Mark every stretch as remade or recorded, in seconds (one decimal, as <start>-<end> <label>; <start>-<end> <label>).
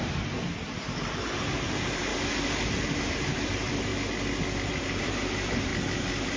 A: 0.0-2.1 remade; 2.1-2.7 recorded; 2.7-3.9 remade; 3.9-4.8 recorded; 4.8-5.7 remade; 5.7-6.4 recorded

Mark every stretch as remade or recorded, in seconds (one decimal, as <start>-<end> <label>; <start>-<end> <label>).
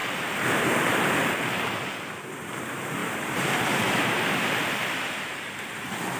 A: 0.0-0.6 recorded; 0.6-6.2 remade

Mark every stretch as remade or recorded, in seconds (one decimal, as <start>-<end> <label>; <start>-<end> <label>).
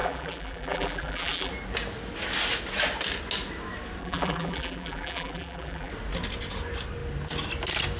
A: 0.0-1.5 remade; 1.5-4.0 recorded; 4.0-5.9 remade; 5.9-8.0 recorded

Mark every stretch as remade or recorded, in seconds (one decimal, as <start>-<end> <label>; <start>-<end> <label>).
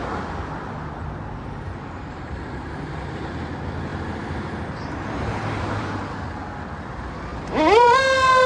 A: 0.0-3.9 recorded; 3.9-5.9 remade; 5.9-7.3 recorded; 7.3-8.0 remade; 8.0-8.5 recorded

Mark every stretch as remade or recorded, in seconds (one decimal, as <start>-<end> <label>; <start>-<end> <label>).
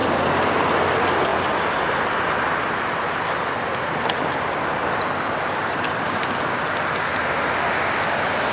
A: 0.0-1.3 recorded; 1.3-2.5 remade; 2.5-3.7 recorded; 3.7-7.2 remade; 7.2-8.5 recorded